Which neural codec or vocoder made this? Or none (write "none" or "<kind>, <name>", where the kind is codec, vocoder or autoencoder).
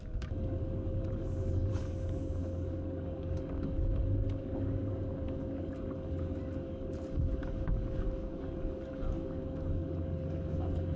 codec, DAC